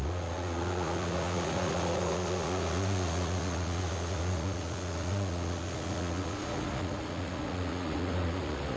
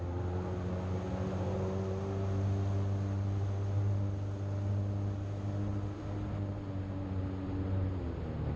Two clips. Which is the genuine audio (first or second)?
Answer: second